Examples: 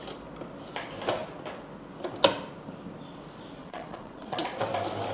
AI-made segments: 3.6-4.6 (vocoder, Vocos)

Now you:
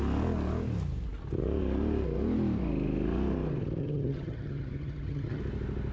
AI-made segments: 3.8-5.4 (vocoder, HiFi-GAN)

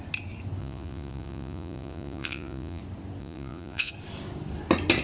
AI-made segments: 0.6-2.8 (vocoder, Vocos); 3.2-3.9

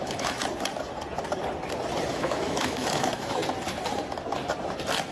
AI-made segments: 0.0-0.4 (autoencoder, DAC-VAE); 2.1-3.4

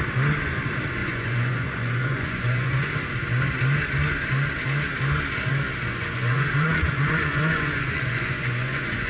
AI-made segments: 1.0-2.9 (vocoder, Vocos); 5.9-9.1

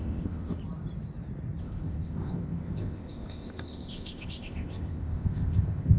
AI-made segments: 0.0-0.6 (codec, ZipCodec); 1.6-6.0

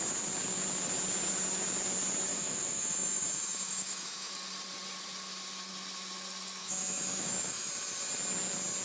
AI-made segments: 2.3-4.3 (autoencoder, DAC-VAE); 6.6-7.7